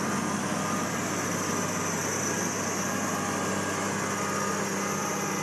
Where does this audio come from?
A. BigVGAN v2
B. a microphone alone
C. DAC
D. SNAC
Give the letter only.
B